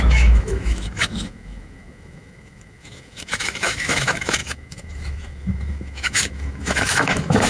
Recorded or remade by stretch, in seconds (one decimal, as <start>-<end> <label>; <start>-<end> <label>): 0.0-7.5 remade